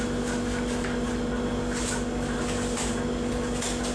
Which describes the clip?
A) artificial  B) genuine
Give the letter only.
B